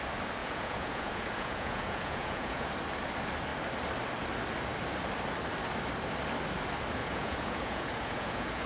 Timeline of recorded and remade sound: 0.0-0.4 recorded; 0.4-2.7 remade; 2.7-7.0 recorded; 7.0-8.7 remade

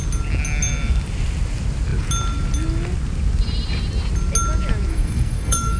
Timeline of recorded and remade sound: 0.0-4.9 recorded; 4.9-5.8 remade

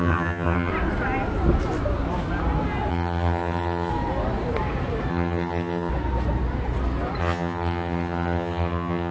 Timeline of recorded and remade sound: 0.0-0.7 remade; 0.7-2.9 recorded; 2.9-3.9 remade; 3.9-5.1 recorded; 5.1-5.9 remade; 5.9-7.2 recorded; 7.2-9.1 remade

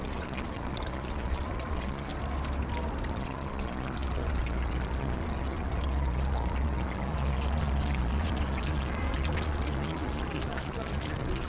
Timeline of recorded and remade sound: 0.0-2.1 remade; 2.1-3.1 recorded; 3.1-11.5 remade

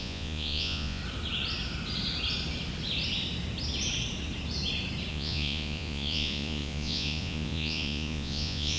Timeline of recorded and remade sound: 0.0-1.0 remade; 1.0-5.1 recorded; 5.1-8.8 remade

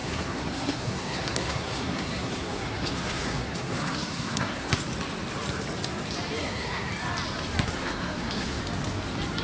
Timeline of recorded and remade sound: 0.0-4.7 remade; 4.7-6.4 recorded; 6.4-6.9 remade; 6.9-7.8 recorded; 7.8-8.6 remade; 8.6-9.4 recorded